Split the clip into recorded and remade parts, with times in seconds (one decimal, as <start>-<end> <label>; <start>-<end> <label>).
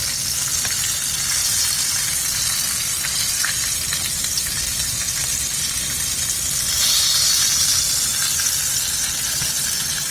0.0-1.4 recorded; 1.4-5.1 remade; 5.1-10.1 recorded